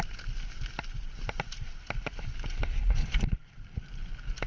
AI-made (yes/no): no